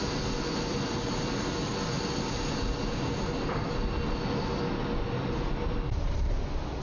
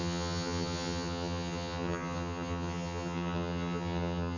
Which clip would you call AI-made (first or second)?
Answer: second